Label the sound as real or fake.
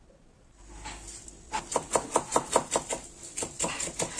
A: real